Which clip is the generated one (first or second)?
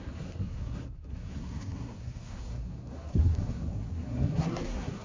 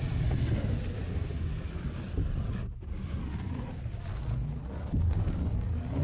first